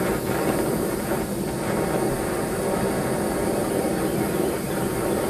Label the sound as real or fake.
real